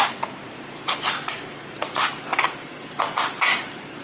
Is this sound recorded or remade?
recorded